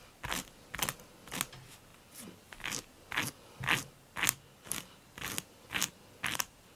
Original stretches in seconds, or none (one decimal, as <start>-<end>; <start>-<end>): 0.0-6.8